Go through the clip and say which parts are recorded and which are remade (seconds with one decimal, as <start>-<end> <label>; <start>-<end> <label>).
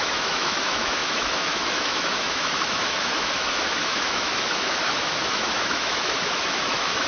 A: 0.0-7.1 remade